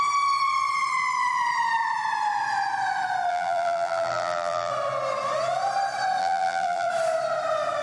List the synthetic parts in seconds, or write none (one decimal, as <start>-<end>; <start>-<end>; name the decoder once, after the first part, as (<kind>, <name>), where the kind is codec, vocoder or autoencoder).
3.3-4.7 (vocoder, BigVGAN v2); 6.2-6.9